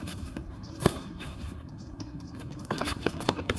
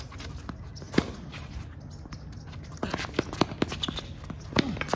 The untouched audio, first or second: second